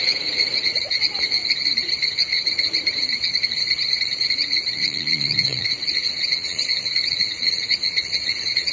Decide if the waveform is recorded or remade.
remade